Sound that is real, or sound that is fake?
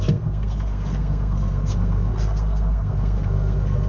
fake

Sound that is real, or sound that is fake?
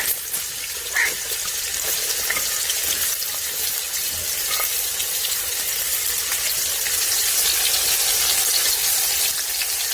real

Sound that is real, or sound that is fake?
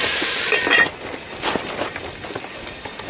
real